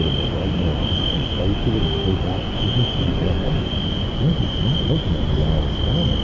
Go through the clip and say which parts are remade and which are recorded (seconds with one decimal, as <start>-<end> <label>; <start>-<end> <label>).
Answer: 0.0-0.7 recorded; 0.7-1.4 remade; 1.4-2.1 recorded; 2.1-5.4 remade; 5.4-6.2 recorded